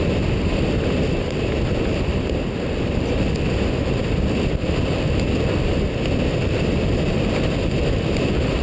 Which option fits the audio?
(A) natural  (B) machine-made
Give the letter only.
A